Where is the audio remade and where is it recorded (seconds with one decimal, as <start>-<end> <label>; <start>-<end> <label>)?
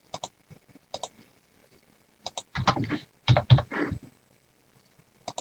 0.0-1.6 recorded; 1.6-4.5 remade; 4.5-5.4 recorded